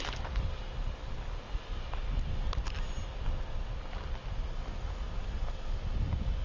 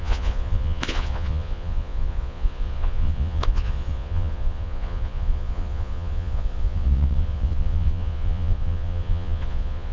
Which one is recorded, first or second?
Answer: first